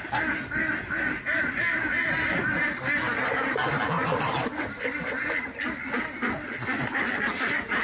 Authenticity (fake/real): real